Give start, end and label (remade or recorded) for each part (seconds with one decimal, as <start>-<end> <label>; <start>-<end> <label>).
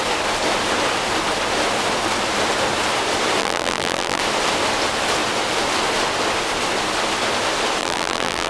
0.0-3.4 recorded; 3.4-4.2 remade; 4.2-7.8 recorded; 7.8-8.5 remade